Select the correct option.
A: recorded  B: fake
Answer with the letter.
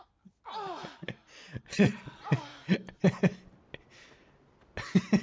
A